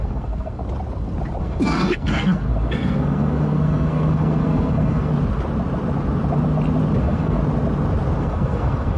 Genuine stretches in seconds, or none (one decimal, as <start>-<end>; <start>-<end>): 0.6-1.4; 5.1-7.0; 7.4-8.2